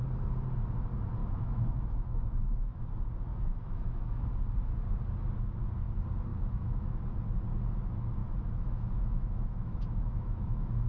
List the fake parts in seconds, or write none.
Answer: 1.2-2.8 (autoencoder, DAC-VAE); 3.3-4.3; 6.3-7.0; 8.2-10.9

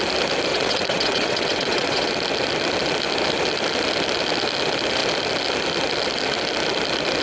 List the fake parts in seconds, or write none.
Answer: 0.5-2.1 (vocoder, WaveNeXt)

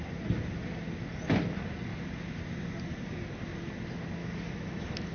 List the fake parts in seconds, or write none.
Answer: 4.2-5.1 (autoencoder, DAC-VAE)

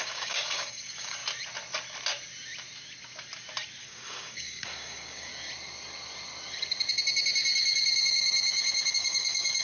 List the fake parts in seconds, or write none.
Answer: 0.0-1.2 (codec, DAC); 3.8-5.3; 8.9-9.6

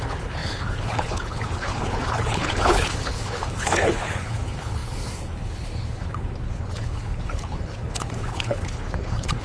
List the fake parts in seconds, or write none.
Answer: 0.0-9.4 (codec, HILCodec)